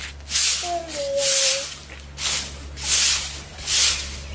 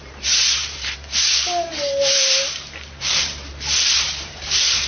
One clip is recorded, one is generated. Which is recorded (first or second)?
first